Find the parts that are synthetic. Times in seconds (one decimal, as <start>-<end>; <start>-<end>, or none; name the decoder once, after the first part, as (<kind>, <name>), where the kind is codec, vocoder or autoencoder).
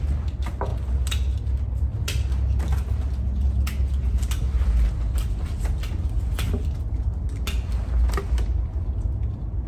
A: none